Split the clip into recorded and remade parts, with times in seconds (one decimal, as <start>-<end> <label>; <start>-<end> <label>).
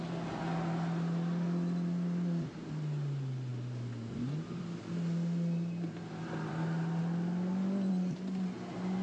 0.0-9.0 recorded